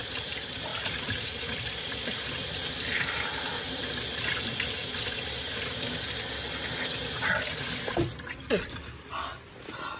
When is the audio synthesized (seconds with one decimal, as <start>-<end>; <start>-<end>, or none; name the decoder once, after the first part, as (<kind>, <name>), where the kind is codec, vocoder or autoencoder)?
0.0-5.7 (vocoder, BigVGAN v2); 7.0-10.0